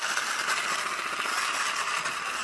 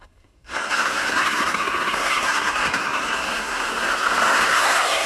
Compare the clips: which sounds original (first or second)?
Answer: first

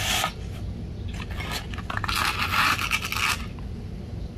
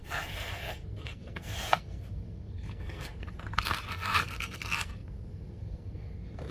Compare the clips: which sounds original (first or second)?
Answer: first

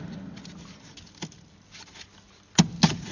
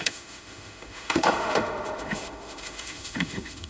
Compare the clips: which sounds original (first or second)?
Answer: first